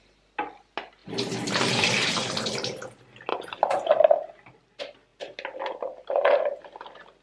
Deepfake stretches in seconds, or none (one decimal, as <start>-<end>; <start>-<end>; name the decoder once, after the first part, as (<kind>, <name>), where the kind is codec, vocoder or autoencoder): 1.0-2.8 (vocoder, BigVGAN v2); 3.3-4.0